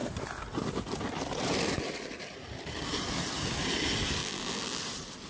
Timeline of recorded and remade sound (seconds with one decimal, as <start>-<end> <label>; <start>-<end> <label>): 0.0-4.2 recorded; 4.2-4.8 remade; 4.8-5.3 recorded